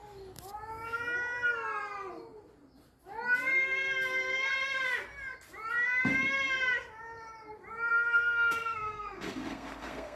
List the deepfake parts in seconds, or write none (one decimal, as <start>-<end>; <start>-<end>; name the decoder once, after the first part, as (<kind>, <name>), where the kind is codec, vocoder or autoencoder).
7.9-10.2 (codec, SNAC)